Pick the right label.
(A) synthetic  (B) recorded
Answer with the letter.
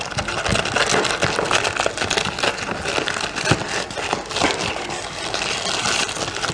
B